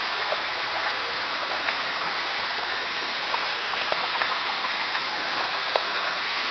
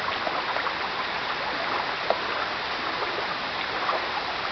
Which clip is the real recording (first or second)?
second